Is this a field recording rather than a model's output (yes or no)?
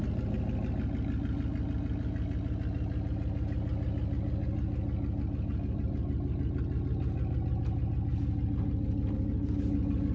yes